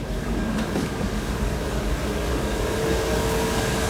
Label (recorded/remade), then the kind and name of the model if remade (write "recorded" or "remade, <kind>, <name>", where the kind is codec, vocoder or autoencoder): remade, codec, DAC